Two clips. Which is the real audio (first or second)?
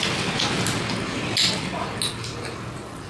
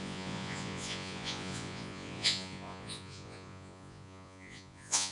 first